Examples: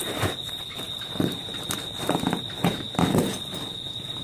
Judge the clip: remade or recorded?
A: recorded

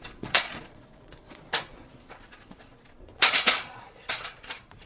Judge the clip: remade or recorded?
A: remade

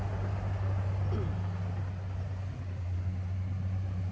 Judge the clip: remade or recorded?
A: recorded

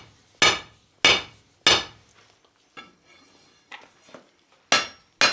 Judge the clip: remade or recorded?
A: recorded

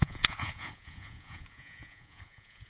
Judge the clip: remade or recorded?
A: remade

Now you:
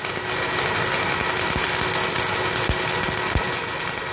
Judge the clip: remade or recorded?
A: recorded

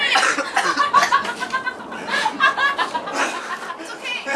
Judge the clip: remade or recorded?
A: recorded